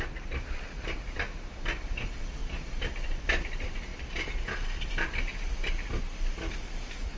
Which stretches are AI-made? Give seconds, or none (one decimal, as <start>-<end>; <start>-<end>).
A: 2.4-3.2; 3.9-6.0